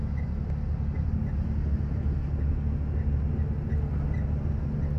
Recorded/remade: recorded